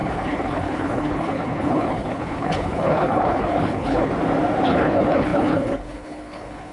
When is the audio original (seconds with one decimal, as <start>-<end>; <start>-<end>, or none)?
4.1-4.6